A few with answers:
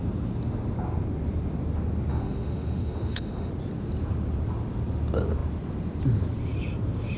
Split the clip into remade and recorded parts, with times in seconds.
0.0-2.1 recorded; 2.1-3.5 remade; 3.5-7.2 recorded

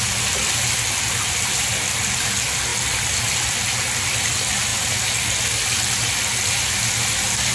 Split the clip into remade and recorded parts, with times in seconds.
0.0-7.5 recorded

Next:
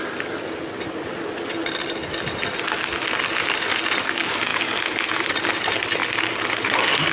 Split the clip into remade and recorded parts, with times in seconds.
0.0-7.1 recorded

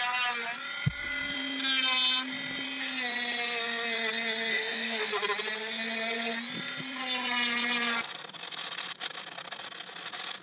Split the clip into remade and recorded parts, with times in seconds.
0.0-4.5 recorded; 4.5-5.1 remade; 5.1-10.4 recorded

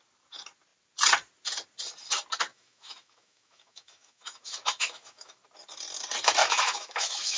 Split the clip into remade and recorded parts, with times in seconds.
0.0-2.5 recorded; 2.5-5.4 remade; 5.4-6.4 recorded; 6.4-7.4 remade

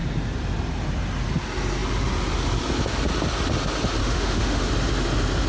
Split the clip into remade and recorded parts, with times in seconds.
0.0-4.0 recorded; 4.0-4.7 remade; 4.7-5.5 recorded

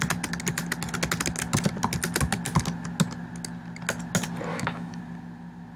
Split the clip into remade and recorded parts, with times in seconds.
0.0-4.5 recorded; 4.5-5.0 remade; 5.0-5.8 recorded